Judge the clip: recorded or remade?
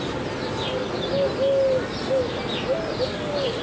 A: recorded